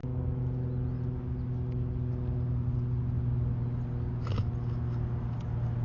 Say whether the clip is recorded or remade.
recorded